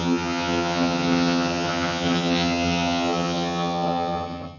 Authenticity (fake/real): fake